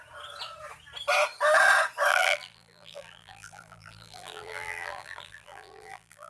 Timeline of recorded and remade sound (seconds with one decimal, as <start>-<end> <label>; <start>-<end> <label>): 0.0-2.1 recorded; 2.1-6.3 remade